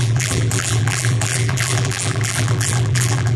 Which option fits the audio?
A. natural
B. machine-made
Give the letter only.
B